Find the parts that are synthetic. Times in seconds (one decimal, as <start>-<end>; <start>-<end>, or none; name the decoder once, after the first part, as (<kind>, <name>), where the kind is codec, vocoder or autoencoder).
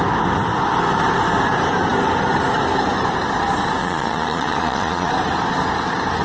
3.8-5.1 (vocoder, Vocos)